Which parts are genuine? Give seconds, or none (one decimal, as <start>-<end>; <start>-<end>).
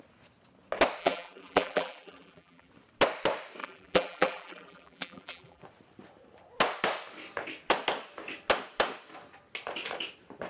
0.0-1.0; 2.7-3.6; 5.6-10.5